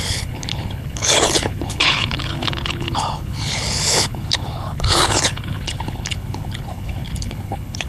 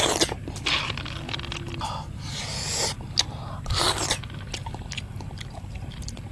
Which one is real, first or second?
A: second